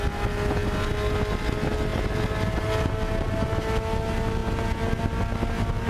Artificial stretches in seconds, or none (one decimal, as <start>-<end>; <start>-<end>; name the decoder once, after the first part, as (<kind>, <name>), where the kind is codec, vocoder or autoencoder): none